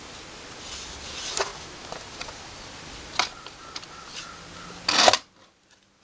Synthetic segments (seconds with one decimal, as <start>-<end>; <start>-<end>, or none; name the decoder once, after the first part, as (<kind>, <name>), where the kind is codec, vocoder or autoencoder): none